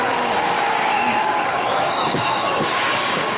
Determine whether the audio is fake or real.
fake